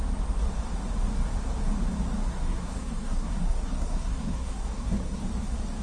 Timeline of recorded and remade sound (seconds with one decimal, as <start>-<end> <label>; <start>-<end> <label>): 0.0-2.3 recorded; 2.3-5.2 remade; 5.2-5.8 recorded